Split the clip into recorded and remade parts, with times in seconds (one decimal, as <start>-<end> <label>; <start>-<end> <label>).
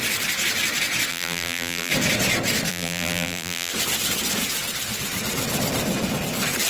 0.0-1.1 recorded; 1.1-1.9 remade; 1.9-2.7 recorded; 2.7-3.7 remade; 3.7-6.7 recorded